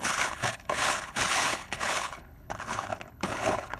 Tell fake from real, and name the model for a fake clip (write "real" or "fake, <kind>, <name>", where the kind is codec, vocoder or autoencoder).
fake, codec, HILCodec